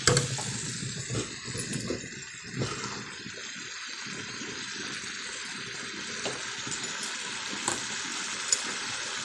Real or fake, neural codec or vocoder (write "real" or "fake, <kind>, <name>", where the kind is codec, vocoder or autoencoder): real